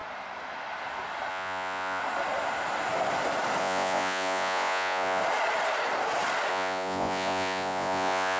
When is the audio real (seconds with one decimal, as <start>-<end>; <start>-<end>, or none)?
0.0-1.3; 2.0-3.6; 5.2-6.5